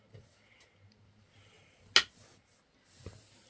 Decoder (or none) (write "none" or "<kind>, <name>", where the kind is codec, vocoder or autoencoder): none